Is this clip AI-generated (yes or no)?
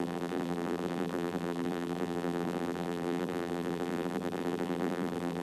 yes